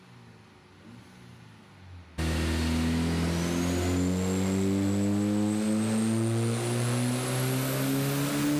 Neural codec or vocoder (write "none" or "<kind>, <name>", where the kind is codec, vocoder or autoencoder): none